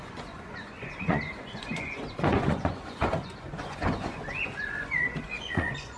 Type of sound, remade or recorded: remade